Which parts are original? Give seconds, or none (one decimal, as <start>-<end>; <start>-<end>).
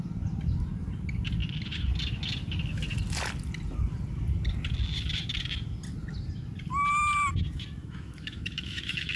0.0-7.8